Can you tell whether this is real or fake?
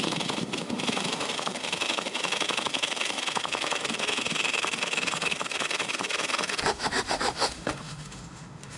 fake